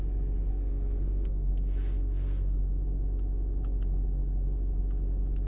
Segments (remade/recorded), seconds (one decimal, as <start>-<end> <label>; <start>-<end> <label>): 0.0-0.5 recorded; 0.5-1.5 remade; 1.5-2.0 recorded; 2.0-2.6 remade; 2.6-5.5 recorded

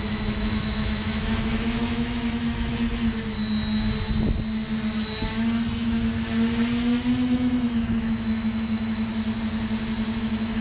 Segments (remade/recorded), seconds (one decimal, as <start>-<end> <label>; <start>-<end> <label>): 0.0-2.7 remade; 2.7-7.3 recorded; 7.3-9.1 remade; 9.1-10.2 recorded; 10.2-10.6 remade

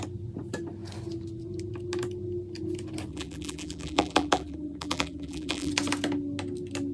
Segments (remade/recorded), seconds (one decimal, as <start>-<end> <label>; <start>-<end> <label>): 0.0-3.1 recorded; 3.1-5.7 remade; 5.7-6.9 recorded

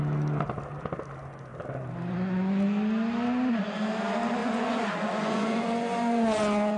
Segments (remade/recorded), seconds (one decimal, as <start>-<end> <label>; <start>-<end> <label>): 0.0-4.4 recorded; 4.4-6.8 remade

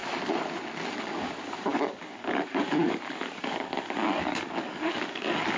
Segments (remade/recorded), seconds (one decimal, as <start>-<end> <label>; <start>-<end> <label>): 0.0-0.9 recorded; 0.9-5.6 remade

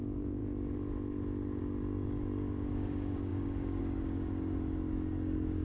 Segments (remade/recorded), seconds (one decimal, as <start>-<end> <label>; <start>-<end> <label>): 0.0-0.4 remade; 0.4-1.6 recorded; 1.6-5.6 remade

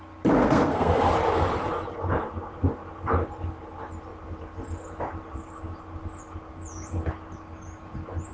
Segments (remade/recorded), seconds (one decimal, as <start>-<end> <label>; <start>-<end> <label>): 0.0-0.4 recorded; 0.4-1.0 remade; 1.0-8.3 recorded